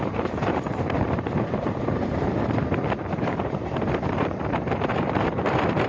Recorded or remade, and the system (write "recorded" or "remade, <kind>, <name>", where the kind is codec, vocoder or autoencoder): remade, vocoder, BigVGAN v2